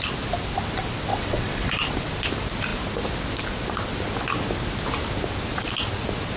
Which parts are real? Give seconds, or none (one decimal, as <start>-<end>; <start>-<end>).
0.0-1.1; 1.7-6.4